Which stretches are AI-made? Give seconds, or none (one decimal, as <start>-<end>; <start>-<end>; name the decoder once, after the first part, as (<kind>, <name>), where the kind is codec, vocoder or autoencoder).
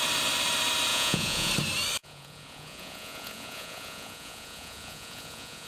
0.9-1.5 (vocoder, Vocos); 2.0-5.7